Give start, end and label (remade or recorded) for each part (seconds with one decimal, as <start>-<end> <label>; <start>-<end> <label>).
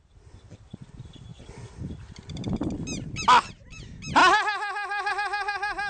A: 0.0-1.3 recorded; 1.3-2.5 remade; 2.5-5.9 recorded